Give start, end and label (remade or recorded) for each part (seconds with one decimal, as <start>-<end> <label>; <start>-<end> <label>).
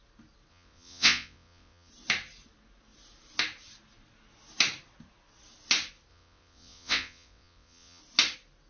0.0-0.5 recorded; 0.5-1.9 remade; 1.9-6.1 recorded; 6.1-8.0 remade; 8.0-8.7 recorded